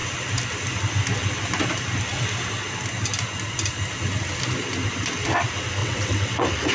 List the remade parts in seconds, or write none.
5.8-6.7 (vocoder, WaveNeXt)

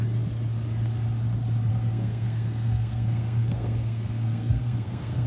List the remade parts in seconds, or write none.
1.7-5.3 (codec, SNAC)